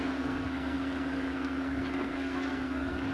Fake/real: fake